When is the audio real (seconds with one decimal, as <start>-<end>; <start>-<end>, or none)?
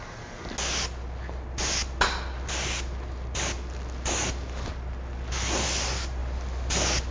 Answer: 0.0-7.1